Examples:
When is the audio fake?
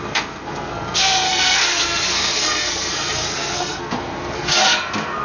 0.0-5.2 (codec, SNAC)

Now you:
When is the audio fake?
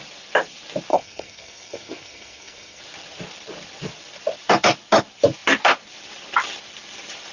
0.9-2.8 (codec, SNAC)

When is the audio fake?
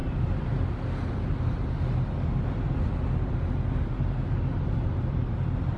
none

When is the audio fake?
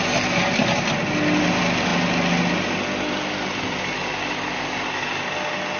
none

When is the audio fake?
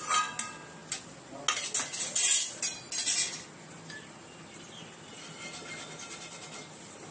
none